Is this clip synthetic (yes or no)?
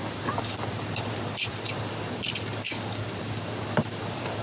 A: no